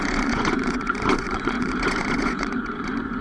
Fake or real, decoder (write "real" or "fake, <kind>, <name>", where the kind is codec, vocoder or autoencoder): fake, vocoder, Vocos